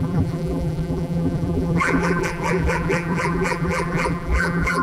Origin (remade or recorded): remade